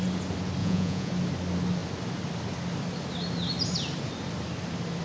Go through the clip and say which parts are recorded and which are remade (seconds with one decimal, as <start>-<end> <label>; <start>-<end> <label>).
0.0-0.6 recorded; 0.6-1.1 remade; 1.1-5.0 recorded